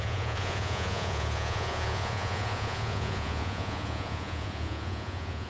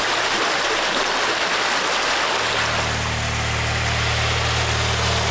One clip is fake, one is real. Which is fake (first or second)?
first